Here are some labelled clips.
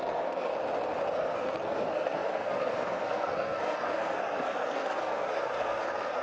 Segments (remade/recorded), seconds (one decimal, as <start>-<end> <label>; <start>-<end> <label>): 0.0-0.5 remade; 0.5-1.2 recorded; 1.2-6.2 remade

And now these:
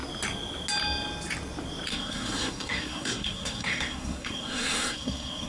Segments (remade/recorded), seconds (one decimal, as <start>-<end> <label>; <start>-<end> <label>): 0.0-1.9 recorded; 1.9-5.5 remade

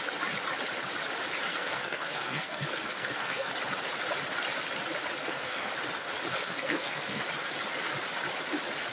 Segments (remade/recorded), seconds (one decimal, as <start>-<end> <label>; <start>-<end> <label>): 0.0-1.5 recorded; 1.5-3.5 remade; 3.5-5.2 recorded; 5.2-5.7 remade; 5.7-6.3 recorded; 6.3-7.2 remade; 7.2-8.9 recorded

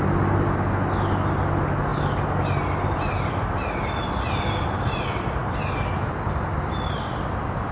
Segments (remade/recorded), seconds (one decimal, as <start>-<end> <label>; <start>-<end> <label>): 0.0-7.7 recorded